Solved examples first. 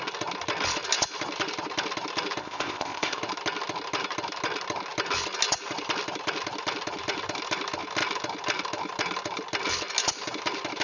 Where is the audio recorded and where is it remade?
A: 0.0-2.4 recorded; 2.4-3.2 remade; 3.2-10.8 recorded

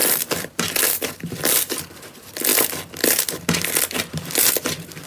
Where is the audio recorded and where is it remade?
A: 0.0-1.9 remade; 1.9-5.1 recorded

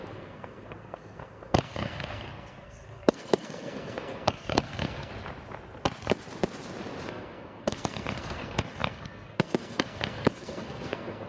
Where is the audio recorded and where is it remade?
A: 0.0-5.1 remade; 5.1-7.1 recorded; 7.1-11.3 remade

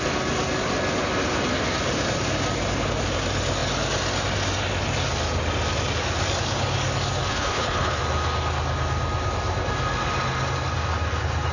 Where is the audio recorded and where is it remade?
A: 0.0-7.3 recorded; 7.3-8.0 remade; 8.0-11.5 recorded

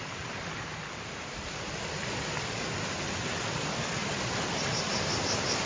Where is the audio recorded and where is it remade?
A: 0.0-0.7 remade; 0.7-1.3 recorded; 1.3-4.0 remade; 4.0-4.6 recorded; 4.6-5.7 remade

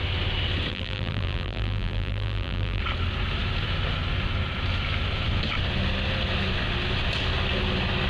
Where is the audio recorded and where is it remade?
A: 0.0-0.7 recorded; 0.7-2.8 remade; 2.8-8.1 recorded

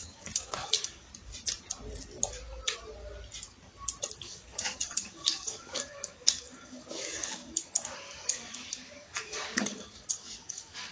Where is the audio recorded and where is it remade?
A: 0.0-1.1 remade; 1.1-4.1 recorded; 4.1-10.9 remade

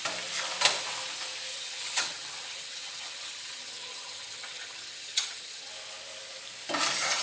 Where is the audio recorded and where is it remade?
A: 0.0-1.5 recorded; 1.5-5.7 remade; 5.7-7.2 recorded